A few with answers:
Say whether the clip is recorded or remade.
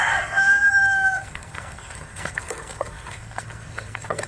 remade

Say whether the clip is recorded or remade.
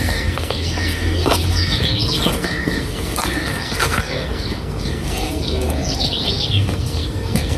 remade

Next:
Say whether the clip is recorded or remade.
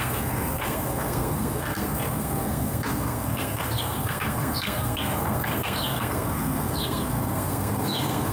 remade